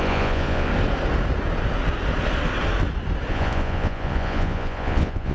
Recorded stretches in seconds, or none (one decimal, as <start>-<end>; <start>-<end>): 0.7-3.3